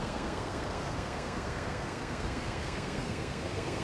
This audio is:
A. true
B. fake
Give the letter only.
B